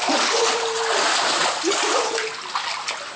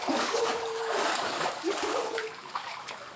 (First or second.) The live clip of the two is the first